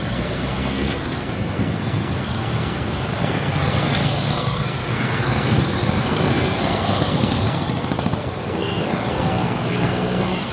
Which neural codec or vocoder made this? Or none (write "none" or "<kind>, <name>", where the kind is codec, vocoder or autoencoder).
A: codec, SNAC